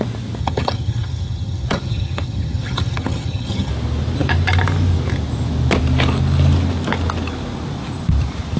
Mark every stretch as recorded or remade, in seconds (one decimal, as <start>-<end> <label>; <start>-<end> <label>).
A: 0.0-0.4 recorded; 0.4-3.7 remade; 3.7-8.6 recorded